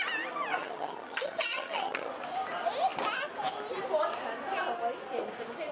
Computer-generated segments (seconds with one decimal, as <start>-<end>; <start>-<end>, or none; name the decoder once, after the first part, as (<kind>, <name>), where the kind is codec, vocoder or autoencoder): 0.5-2.1 (vocoder, HiFi-GAN)